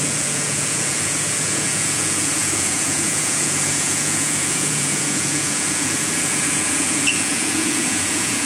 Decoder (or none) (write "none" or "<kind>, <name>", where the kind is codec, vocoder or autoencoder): vocoder, Vocos